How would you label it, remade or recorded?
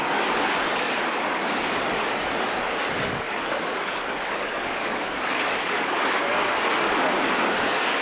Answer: remade